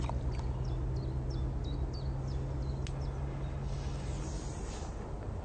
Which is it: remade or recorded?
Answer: recorded